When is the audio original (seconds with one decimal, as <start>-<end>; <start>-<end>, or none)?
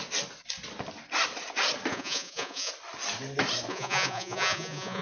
0.0-1.9; 2.7-3.7